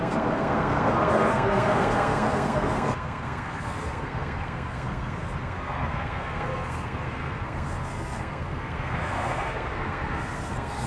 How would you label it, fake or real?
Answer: fake